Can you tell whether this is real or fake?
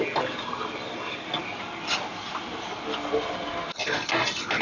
real